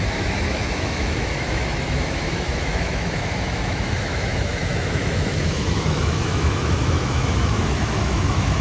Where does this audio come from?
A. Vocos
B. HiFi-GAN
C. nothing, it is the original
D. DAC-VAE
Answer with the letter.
D